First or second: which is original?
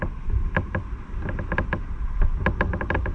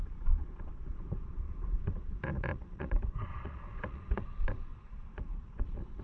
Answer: first